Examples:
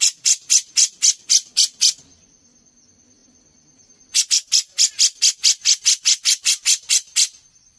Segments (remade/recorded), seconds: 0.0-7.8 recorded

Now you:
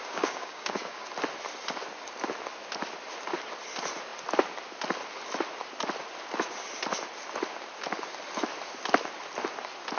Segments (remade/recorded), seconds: 0.0-1.1 remade; 1.1-10.0 recorded